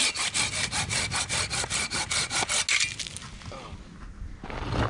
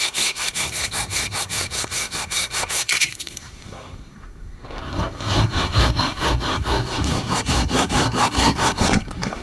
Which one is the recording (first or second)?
first